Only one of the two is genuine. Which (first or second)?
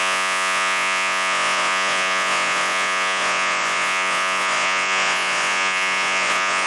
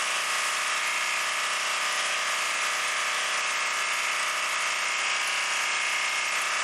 second